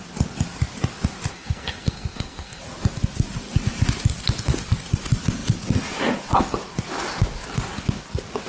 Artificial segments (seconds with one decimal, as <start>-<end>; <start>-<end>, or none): 1.3-2.6